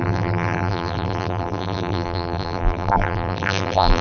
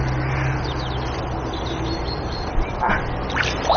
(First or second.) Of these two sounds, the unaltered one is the second